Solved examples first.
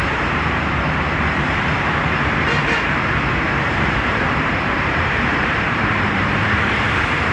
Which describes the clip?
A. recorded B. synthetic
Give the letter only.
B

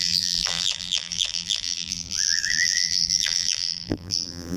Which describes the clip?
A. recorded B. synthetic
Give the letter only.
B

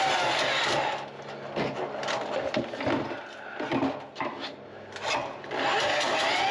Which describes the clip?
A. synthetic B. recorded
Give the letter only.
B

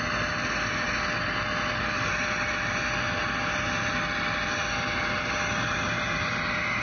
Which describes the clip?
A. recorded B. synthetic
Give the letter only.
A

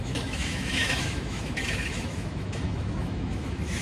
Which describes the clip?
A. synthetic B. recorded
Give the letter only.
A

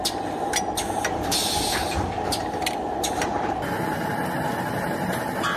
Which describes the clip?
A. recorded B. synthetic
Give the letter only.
A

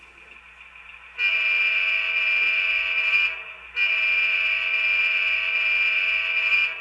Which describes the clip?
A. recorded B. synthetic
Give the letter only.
A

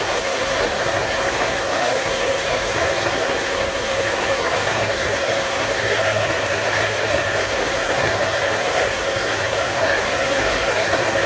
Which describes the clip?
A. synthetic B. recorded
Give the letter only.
A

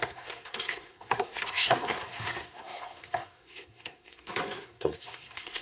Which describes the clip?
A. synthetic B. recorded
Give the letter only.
A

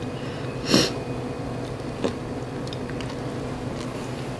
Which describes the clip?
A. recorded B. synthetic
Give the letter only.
A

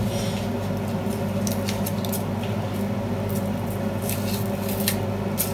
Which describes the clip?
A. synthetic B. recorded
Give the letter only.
B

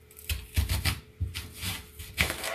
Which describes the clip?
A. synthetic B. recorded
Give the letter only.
B